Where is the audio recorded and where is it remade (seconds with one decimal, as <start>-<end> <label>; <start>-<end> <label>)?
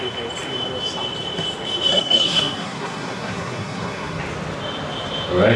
0.0-1.9 recorded; 1.9-4.2 remade; 4.2-5.6 recorded